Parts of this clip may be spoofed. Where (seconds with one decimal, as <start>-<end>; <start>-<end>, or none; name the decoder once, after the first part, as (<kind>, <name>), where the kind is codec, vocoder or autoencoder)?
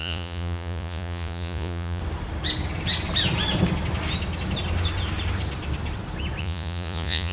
0.0-2.0 (vocoder, Vocos); 6.4-7.3